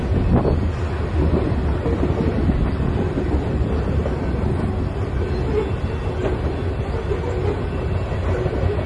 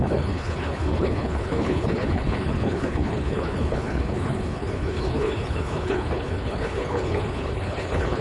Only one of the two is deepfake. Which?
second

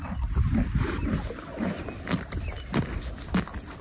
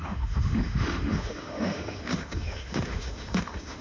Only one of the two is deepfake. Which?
second